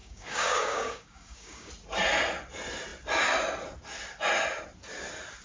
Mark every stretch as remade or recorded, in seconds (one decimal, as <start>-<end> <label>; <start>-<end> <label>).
0.0-1.7 remade; 1.7-5.4 recorded